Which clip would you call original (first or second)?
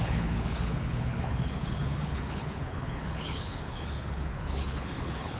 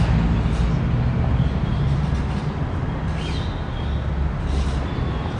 second